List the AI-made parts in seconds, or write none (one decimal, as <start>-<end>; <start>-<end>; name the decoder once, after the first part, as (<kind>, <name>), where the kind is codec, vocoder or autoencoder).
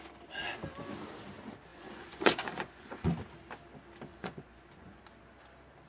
1.7-3.1 (vocoder, Vocos); 4.1-5.0